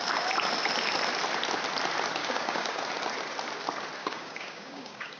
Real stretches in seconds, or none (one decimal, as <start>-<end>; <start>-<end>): 0.0-2.2; 2.8-4.0